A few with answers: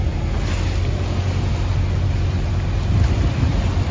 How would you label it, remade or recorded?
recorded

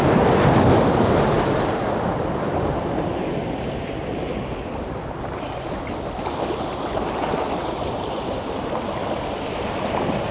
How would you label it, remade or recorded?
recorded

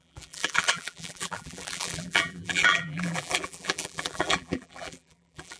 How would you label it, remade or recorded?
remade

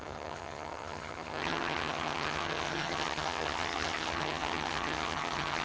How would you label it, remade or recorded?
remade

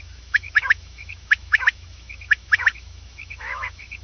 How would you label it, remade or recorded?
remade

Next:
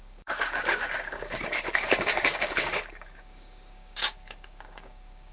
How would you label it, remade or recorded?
remade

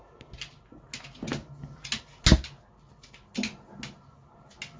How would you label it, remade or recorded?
recorded